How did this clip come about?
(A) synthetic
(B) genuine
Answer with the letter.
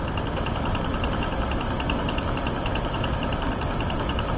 B